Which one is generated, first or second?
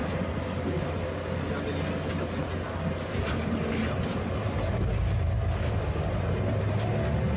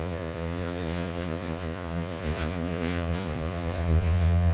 second